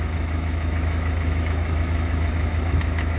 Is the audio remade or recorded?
remade